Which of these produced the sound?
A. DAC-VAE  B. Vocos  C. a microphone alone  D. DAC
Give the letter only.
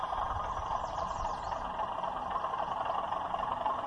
C